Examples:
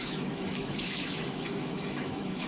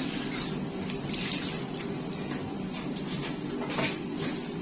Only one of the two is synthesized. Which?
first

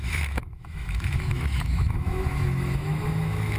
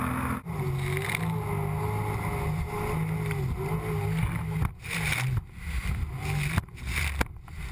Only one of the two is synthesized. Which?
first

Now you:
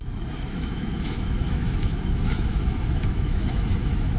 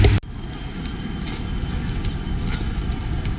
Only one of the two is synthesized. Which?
first